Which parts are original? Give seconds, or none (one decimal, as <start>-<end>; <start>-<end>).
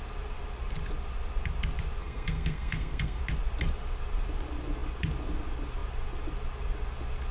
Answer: 0.0-2.0; 3.2-7.3